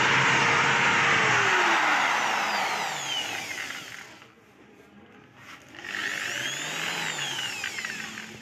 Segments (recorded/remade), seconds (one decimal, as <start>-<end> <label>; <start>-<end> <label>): 0.0-8.4 recorded